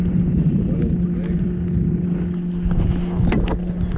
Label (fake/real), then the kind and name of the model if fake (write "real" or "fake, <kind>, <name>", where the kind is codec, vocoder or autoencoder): real